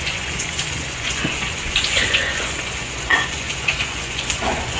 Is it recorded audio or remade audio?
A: remade